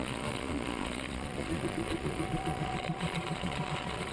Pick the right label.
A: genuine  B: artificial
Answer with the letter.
B